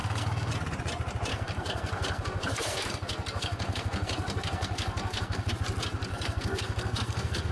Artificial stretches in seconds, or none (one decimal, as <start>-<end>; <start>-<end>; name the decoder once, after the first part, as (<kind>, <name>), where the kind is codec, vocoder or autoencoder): 0.0-0.5 (codec, SNAC); 1.3-5.5; 6.1-7.5